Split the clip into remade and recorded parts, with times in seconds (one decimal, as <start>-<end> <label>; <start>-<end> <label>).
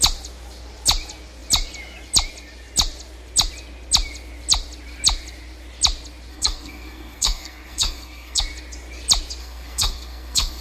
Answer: 0.0-6.3 recorded; 6.3-8.4 remade; 8.4-9.4 recorded; 9.4-10.6 remade